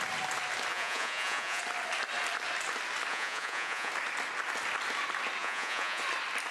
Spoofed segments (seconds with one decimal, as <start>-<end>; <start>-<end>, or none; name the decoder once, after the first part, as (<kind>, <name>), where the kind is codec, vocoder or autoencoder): 0.7-1.6 (vocoder, Vocos); 3.1-3.9; 5.4-6.0